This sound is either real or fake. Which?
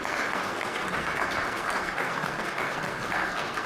fake